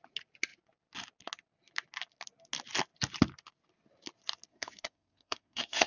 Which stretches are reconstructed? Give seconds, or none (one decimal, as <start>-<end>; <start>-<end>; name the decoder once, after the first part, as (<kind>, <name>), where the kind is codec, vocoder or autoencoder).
4.5-5.9 (codec, SNAC)